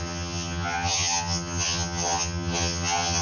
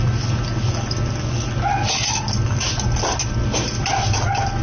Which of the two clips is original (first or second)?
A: second